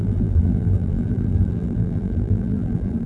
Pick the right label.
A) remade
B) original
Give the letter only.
A